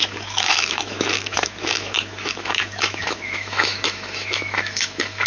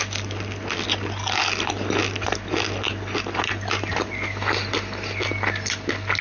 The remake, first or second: first